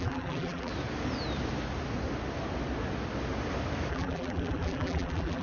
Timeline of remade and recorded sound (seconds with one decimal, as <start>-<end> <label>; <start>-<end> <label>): 0.0-0.7 remade; 0.7-3.9 recorded; 3.9-5.4 remade